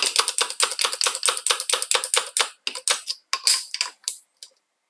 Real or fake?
real